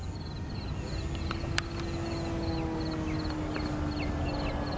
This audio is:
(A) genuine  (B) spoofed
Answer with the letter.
A